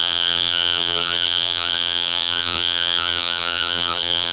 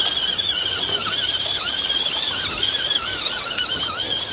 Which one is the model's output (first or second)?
first